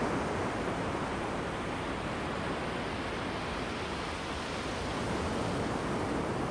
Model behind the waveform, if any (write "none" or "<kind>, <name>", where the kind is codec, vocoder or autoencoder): none